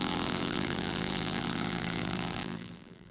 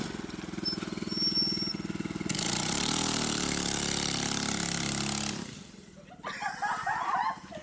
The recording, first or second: second